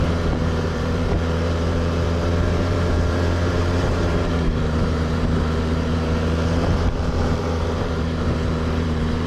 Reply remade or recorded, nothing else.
remade